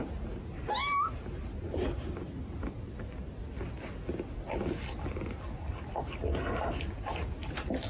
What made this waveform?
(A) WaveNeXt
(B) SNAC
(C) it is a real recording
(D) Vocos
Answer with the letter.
C